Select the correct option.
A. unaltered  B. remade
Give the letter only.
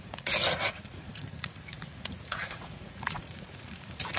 B